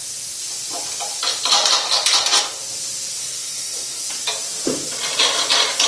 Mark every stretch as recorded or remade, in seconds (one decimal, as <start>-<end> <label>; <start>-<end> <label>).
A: 0.0-3.2 recorded; 3.2-4.1 remade; 4.1-5.9 recorded